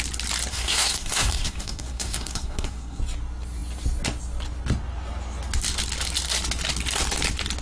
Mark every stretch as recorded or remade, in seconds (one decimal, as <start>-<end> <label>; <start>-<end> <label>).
0.0-0.5 recorded; 0.5-3.0 remade; 3.0-7.6 recorded